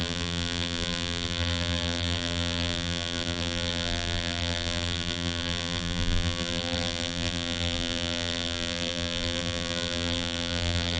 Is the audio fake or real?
fake